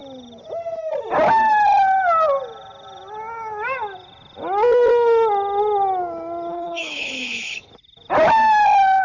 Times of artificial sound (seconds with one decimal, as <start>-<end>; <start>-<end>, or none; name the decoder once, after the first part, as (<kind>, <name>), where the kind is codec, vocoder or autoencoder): 6.5-7.7 (codec, HILCodec)